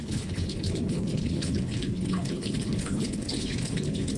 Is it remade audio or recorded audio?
remade